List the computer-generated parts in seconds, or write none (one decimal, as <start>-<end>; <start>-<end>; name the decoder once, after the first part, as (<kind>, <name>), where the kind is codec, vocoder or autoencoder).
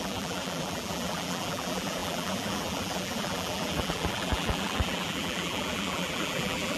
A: 0.0-6.8 (vocoder, BigVGAN v2)